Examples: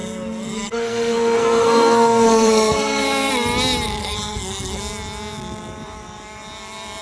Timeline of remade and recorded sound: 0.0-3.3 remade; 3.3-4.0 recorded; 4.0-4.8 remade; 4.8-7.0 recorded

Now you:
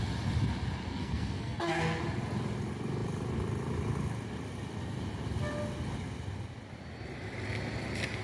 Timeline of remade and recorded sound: 0.0-0.9 recorded; 0.9-2.0 remade; 2.0-8.2 recorded

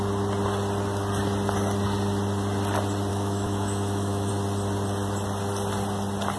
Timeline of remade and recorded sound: 0.0-3.1 recorded; 3.1-4.3 remade; 4.3-6.4 recorded